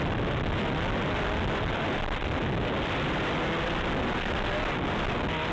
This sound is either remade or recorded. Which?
recorded